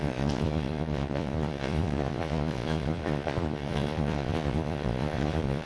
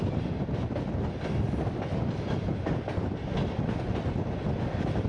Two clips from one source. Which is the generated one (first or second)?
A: first